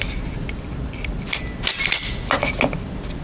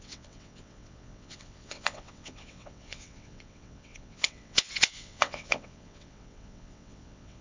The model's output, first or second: second